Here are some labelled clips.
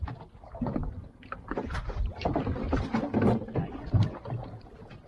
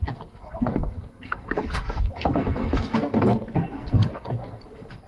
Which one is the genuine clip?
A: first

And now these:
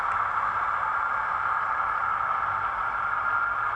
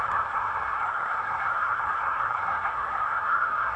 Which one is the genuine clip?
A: first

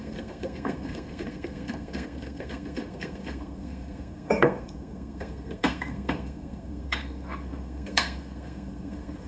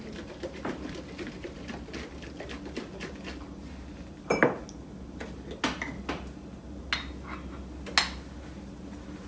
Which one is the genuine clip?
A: second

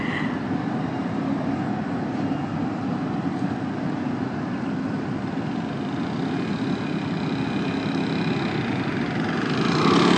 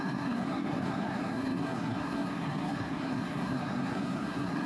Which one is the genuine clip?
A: first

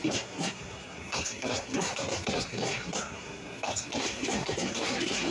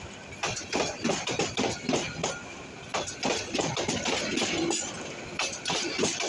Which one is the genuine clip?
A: second